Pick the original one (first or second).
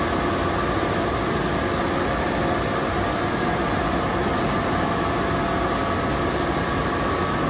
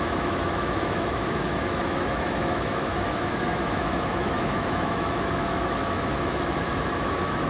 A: first